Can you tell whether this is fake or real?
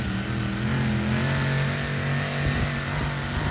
real